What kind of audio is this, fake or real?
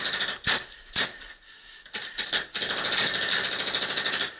real